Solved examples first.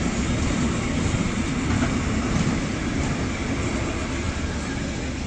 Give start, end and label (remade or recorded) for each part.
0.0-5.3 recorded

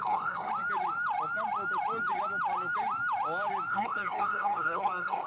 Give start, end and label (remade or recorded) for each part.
0.0-0.5 remade; 0.5-3.7 recorded; 3.7-5.3 remade

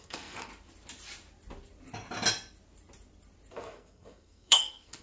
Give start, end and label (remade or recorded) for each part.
0.0-0.5 remade; 0.5-3.5 recorded; 3.5-5.0 remade

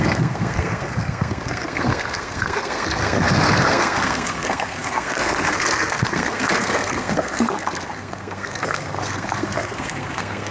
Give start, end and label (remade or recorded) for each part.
0.0-10.5 remade

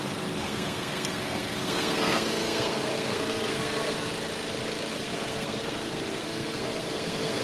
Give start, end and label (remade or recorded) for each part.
0.0-4.1 remade; 4.1-4.9 recorded; 4.9-7.4 remade

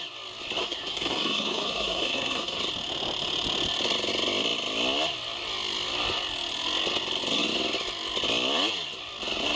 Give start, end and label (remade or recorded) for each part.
0.0-0.6 recorded; 0.6-2.6 remade; 2.6-9.6 recorded